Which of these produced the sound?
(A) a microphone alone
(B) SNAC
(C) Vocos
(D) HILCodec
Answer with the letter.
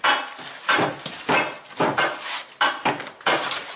A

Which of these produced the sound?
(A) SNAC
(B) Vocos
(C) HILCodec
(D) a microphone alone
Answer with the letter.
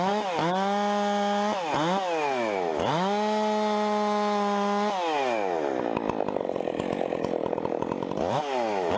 D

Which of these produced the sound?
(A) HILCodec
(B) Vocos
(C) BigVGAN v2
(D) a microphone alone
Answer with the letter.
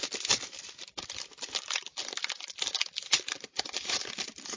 D